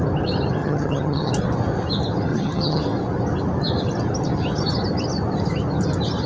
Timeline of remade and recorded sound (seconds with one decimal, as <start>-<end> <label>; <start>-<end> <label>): 0.0-0.6 recorded; 0.6-1.3 remade; 1.3-2.3 recorded; 2.3-2.8 remade; 2.8-6.3 recorded